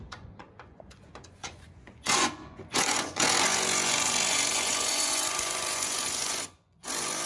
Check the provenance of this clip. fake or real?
fake